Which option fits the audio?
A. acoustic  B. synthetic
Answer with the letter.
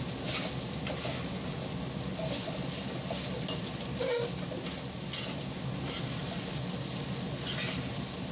A